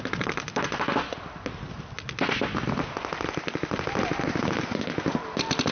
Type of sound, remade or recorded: recorded